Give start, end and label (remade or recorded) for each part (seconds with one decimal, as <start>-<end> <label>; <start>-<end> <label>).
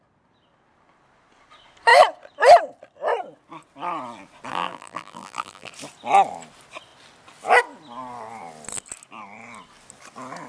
0.0-4.5 recorded; 4.5-5.7 remade; 5.7-10.5 recorded